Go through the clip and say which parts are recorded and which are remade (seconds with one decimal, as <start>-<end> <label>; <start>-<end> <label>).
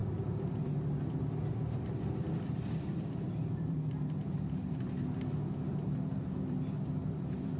0.0-7.6 remade